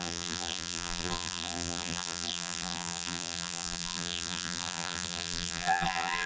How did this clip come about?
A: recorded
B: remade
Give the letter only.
B